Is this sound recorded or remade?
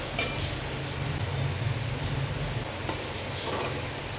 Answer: recorded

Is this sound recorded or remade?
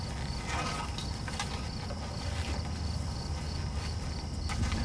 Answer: recorded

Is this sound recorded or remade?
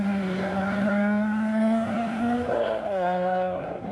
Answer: remade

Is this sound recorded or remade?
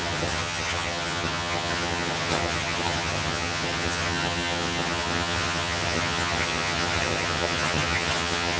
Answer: remade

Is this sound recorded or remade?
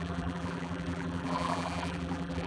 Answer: remade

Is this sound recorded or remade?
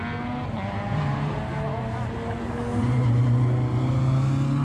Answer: recorded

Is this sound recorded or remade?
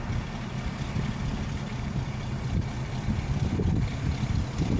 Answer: recorded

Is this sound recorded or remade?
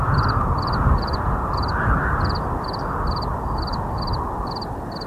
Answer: recorded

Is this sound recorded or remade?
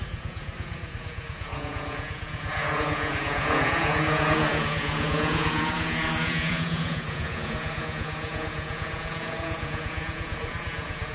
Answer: remade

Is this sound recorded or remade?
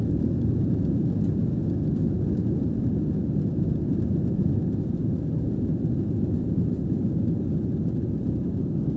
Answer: recorded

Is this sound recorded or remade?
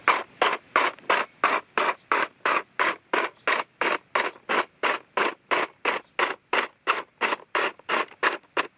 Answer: recorded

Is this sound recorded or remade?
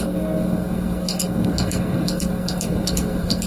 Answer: remade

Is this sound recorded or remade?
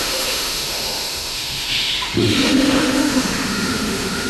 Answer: remade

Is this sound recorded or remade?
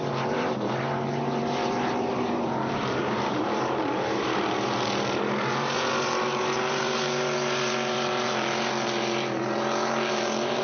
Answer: remade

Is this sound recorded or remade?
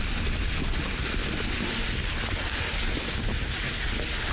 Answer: recorded